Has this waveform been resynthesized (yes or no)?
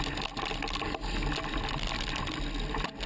no